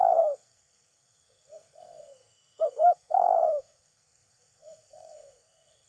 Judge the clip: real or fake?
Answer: fake